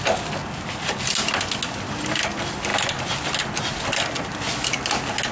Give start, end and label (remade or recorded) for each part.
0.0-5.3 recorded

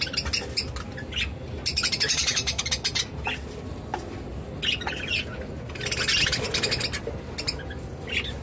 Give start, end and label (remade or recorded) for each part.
0.0-1.7 recorded; 1.7-2.6 remade; 2.6-8.4 recorded